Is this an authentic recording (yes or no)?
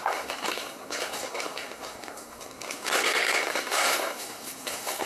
no